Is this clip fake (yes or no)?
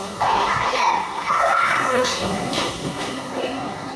yes